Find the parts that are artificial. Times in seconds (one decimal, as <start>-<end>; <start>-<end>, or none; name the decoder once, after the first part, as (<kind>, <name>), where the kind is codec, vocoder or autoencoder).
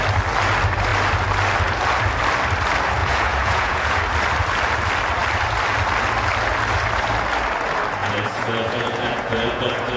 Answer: 3.0-4.0 (vocoder, Vocos); 8.0-10.0